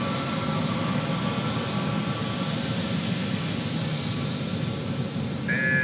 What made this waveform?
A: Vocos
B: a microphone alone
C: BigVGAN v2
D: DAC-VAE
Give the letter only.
B